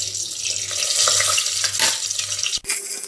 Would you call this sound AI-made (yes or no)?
no